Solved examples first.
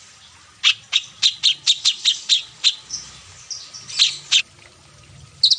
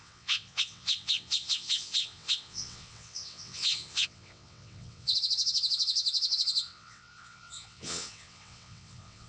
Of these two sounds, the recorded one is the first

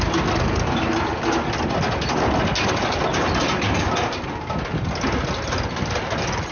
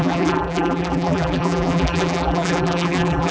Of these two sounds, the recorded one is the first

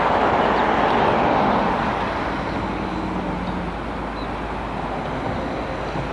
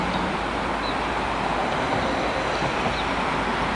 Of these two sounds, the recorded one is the first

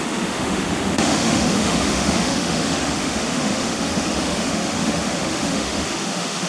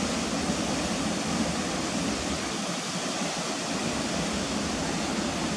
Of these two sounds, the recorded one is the second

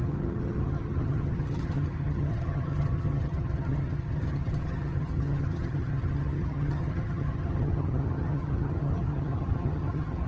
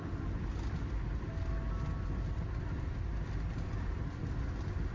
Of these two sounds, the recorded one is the second